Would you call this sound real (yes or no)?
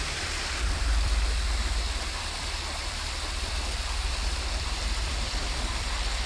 no